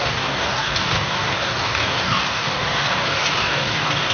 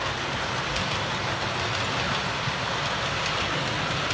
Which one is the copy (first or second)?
first